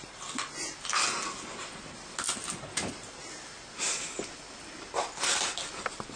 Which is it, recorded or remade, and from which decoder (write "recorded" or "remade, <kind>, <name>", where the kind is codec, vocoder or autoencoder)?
recorded